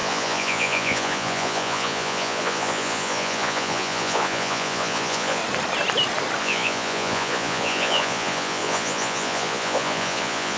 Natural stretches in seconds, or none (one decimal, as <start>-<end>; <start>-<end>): 5.4-6.4